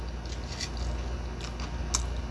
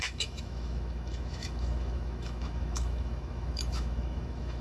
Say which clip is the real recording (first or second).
first